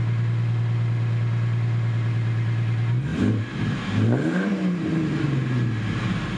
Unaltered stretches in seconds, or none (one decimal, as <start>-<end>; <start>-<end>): 0.0-3.1